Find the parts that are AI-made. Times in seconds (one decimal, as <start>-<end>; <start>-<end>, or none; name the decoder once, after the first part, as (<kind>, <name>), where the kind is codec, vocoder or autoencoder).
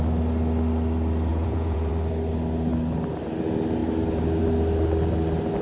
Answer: 1.3-1.9 (vocoder, Vocos)